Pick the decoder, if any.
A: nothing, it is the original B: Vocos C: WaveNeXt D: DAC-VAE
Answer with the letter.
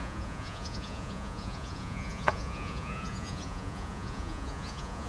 B